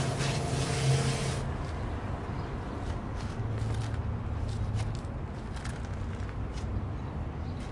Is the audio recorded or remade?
recorded